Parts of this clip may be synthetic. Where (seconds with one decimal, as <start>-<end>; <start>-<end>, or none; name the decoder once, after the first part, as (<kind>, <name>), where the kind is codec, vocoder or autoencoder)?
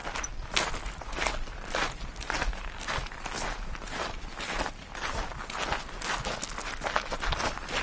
none